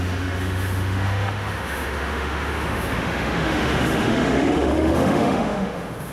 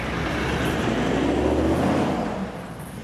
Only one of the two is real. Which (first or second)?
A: second